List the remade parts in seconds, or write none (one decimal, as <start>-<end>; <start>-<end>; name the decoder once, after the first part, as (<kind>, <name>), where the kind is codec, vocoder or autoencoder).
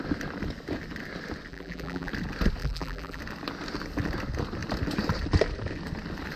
1.5-2.1 (vocoder, BigVGAN v2); 2.6-3.2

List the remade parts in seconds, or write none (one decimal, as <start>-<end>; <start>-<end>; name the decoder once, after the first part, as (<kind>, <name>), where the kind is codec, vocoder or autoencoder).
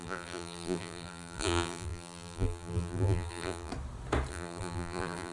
0.0-3.7 (vocoder, BigVGAN v2); 4.3-5.3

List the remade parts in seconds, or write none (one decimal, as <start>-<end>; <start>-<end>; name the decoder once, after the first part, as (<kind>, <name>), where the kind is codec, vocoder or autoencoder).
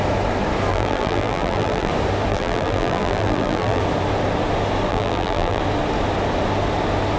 0.7-1.9 (vocoder, BigVGAN v2); 2.3-3.8; 4.9-5.6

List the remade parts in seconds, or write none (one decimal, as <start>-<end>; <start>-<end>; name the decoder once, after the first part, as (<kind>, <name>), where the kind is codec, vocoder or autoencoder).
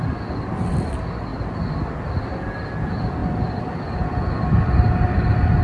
3.2-3.8 (vocoder, BigVGAN v2)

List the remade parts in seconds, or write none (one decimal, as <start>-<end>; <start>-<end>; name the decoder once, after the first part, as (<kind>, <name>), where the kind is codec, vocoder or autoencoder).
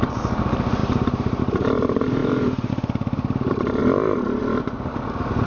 0.0-5.5 (vocoder, BigVGAN v2)